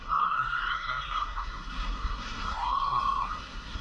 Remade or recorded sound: remade